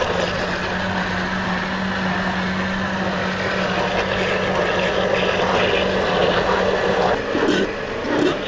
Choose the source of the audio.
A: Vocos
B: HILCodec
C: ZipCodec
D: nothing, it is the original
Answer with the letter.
D